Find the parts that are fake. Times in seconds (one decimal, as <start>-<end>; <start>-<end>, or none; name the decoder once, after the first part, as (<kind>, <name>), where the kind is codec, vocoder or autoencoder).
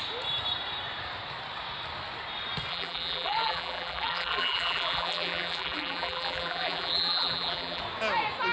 2.7-7.8 (vocoder, BigVGAN v2)